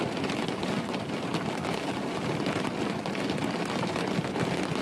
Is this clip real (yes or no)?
yes